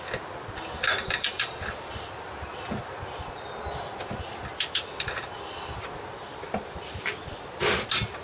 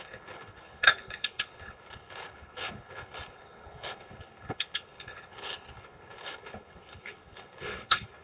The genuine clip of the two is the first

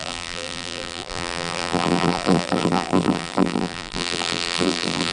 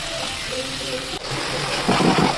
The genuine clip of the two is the second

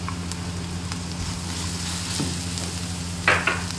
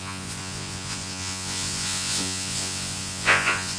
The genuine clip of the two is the first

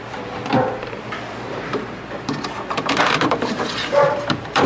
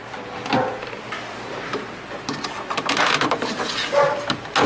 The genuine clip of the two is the second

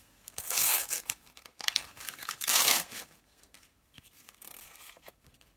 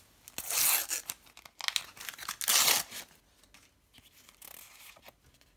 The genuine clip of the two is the second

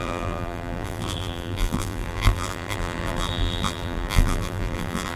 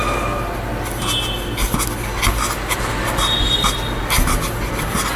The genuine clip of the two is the second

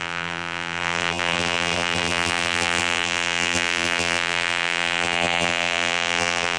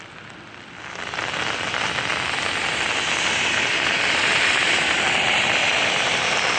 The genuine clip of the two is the second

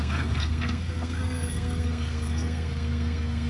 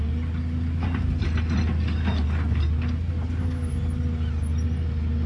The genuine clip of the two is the second